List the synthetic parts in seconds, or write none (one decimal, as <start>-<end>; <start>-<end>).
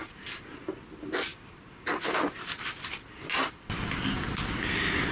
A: 0.0-0.6; 1.3-4.3